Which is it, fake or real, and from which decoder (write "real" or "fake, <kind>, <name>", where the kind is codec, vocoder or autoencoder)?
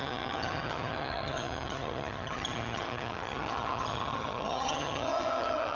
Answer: fake, vocoder, HiFi-GAN